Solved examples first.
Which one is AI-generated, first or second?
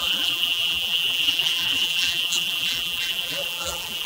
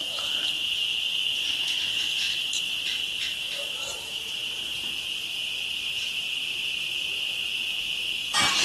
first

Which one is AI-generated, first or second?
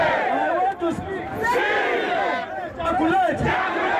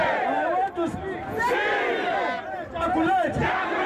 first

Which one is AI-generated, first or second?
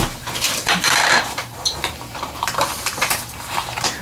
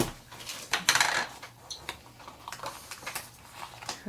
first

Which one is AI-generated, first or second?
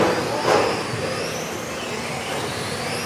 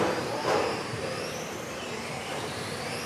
second